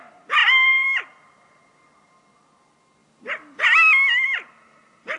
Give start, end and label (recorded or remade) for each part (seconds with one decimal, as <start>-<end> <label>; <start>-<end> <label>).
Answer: 0.0-0.4 recorded; 0.4-1.2 remade; 1.2-4.1 recorded; 4.1-4.6 remade; 4.6-5.2 recorded